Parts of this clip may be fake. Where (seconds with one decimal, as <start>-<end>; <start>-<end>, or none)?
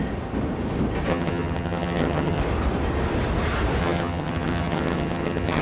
1.1-2.4; 3.8-5.6